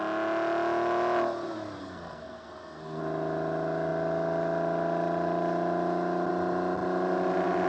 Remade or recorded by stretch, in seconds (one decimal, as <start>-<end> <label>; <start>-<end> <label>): 0.0-1.8 recorded; 1.8-3.0 remade; 3.0-7.7 recorded